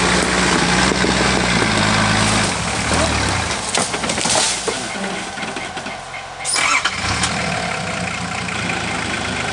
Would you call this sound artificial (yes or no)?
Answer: no